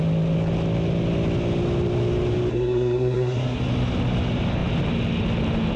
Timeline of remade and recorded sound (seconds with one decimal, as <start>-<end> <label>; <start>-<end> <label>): 0.0-2.5 recorded; 2.5-3.6 remade; 3.6-5.8 recorded